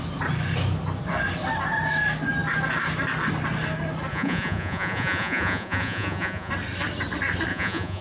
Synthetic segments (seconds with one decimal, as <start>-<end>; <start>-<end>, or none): 4.1-6.5; 7.5-8.0